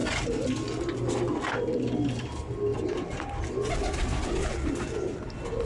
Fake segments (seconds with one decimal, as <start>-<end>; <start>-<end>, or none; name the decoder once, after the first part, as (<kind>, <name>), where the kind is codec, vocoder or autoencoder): none